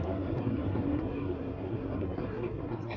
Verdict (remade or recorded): remade